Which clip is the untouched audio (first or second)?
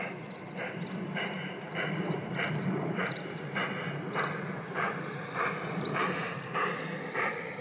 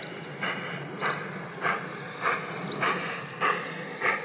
second